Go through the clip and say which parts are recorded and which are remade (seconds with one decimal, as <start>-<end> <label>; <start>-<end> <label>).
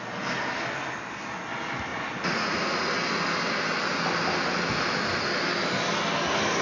0.0-1.9 recorded; 1.9-2.9 remade; 2.9-6.6 recorded